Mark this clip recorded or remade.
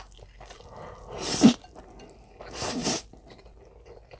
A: recorded